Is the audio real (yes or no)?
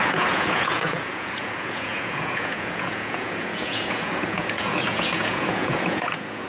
no